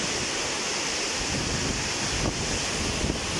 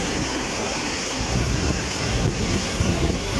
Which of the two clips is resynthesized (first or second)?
second